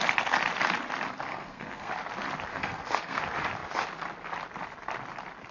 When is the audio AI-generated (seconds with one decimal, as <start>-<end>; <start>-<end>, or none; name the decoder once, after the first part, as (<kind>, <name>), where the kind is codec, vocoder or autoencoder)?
1.3-1.9 (codec, SNAC); 2.5-3.2